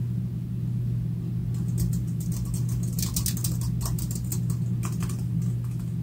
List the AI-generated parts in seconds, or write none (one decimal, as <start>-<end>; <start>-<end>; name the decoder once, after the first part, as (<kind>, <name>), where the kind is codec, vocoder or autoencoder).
none